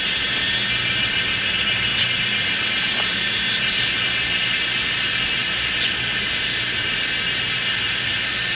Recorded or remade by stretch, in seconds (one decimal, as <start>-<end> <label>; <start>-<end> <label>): 0.0-8.5 recorded